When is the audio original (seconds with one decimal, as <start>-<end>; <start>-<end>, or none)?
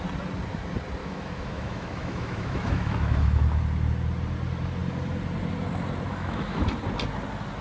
0.0-1.0; 3.6-6.1; 6.7-7.6